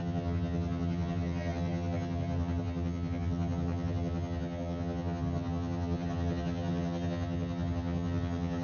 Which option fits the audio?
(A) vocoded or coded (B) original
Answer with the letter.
A